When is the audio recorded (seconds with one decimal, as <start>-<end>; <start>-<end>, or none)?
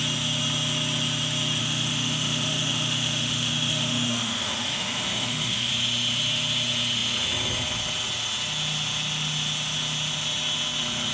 0.0-1.6; 5.7-11.1